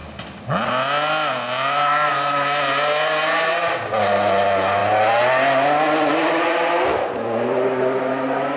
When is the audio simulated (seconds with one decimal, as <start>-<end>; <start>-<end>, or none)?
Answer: none